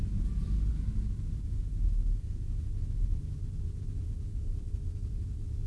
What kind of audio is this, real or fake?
real